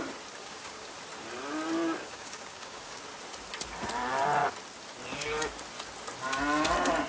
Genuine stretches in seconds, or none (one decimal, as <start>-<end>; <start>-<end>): 0.0-0.4; 0.9-2.0; 3.0-7.1